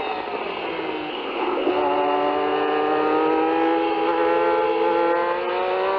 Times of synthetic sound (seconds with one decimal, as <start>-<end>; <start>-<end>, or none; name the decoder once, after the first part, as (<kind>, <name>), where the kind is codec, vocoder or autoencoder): 1.1-1.7 (codec, ZipCodec)